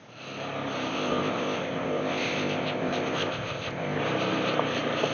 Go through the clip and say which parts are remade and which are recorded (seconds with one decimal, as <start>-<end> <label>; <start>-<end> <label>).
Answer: 0.0-0.9 recorded; 0.9-4.0 remade; 4.0-5.1 recorded